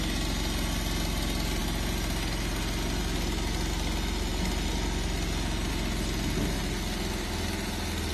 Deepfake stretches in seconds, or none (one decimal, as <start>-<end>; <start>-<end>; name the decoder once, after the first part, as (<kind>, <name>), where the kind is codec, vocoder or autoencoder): none